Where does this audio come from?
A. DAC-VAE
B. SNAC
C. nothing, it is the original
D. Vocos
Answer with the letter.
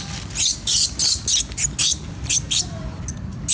C